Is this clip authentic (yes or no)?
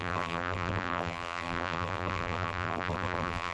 no